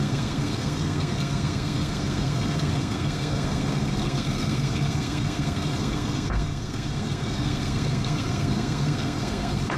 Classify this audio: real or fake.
fake